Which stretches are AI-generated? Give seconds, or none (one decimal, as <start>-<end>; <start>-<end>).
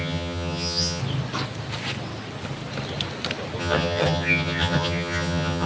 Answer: 0.0-1.0; 3.6-5.7